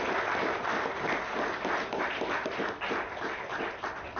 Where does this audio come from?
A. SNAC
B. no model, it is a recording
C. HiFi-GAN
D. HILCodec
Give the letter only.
B